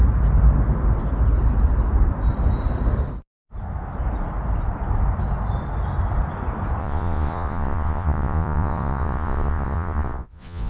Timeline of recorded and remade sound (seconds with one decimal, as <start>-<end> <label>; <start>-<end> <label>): 0.0-6.8 recorded; 6.8-10.7 remade